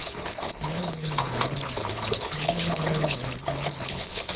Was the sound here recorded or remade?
remade